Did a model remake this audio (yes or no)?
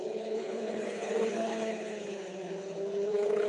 yes